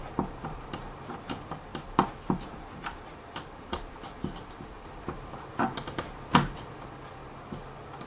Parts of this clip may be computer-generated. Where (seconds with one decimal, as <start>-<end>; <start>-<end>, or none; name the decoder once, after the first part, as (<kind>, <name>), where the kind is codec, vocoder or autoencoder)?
0.0-7.2 (vocoder, BigVGAN v2)